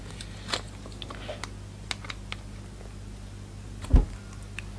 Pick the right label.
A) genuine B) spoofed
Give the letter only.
A